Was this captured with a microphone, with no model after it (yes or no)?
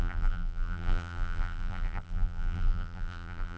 no